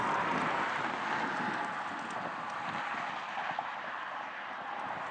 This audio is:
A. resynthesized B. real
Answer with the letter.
B